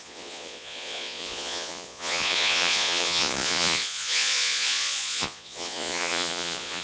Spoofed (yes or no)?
yes